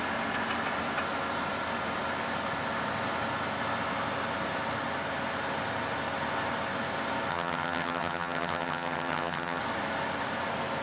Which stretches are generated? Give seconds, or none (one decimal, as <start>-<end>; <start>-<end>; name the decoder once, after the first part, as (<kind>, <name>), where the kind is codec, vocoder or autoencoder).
7.3-9.6 (vocoder, HiFi-GAN)

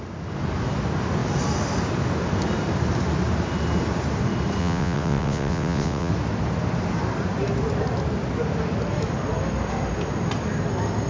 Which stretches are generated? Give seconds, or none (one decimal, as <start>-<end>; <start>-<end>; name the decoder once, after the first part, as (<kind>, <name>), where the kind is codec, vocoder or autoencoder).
4.6-6.1 (vocoder, WaveNeXt)

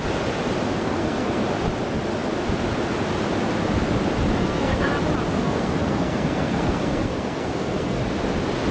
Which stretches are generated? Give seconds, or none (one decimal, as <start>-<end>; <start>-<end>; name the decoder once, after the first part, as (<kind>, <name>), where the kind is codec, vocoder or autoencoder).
0.8-1.4 (codec, SNAC); 4.4-4.9; 5.4-8.0

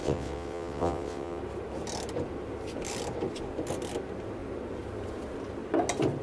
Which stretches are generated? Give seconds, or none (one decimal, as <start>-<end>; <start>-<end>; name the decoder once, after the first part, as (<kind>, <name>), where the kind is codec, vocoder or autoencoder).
0.0-1.4 (vocoder, WaveNeXt)

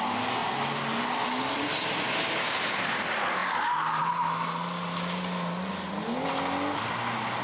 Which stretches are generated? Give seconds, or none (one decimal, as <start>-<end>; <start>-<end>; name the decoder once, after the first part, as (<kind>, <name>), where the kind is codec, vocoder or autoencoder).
none